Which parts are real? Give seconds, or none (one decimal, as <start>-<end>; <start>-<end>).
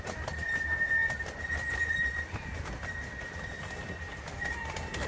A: none